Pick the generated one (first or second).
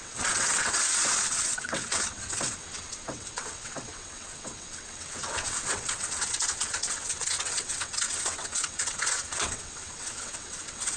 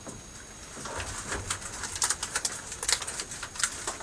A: first